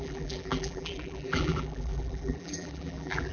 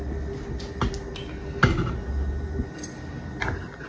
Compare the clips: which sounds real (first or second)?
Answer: second